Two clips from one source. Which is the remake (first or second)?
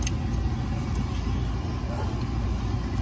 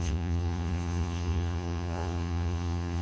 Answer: second